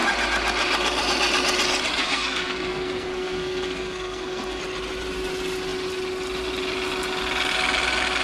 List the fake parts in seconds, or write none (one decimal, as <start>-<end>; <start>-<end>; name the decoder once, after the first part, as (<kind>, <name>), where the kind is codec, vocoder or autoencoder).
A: 2.0-4.6 (codec, SNAC)